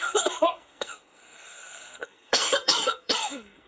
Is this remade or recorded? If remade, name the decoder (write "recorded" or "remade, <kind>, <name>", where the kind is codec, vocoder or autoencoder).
remade, codec, SNAC